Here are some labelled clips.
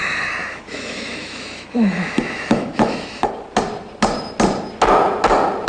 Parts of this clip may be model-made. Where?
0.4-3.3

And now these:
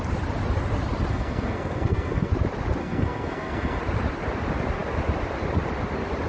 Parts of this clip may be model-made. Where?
1.1-2.3; 2.8-3.8

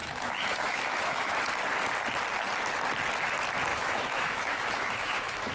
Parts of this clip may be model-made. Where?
0.0-1.4; 3.7-5.5

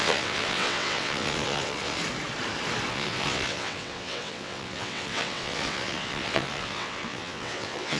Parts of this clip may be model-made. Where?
0.0-2.0; 2.9-8.0